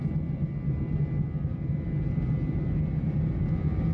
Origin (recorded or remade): recorded